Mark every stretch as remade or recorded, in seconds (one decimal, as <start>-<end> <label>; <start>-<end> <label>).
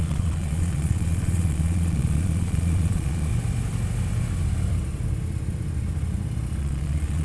0.0-3.3 remade; 3.3-6.6 recorded; 6.6-7.2 remade